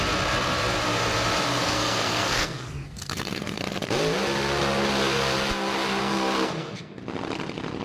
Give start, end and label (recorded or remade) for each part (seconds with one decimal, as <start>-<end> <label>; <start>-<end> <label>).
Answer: 0.0-1.6 recorded; 1.6-3.6 remade; 3.6-6.0 recorded; 6.0-7.0 remade; 7.0-7.8 recorded